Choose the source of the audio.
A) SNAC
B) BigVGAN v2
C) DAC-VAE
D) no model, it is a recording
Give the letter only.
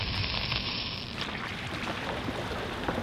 D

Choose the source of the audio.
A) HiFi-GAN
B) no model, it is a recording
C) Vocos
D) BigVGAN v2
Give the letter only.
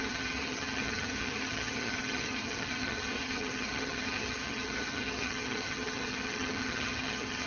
A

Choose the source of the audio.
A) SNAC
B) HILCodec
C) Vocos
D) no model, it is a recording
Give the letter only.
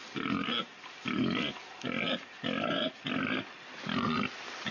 D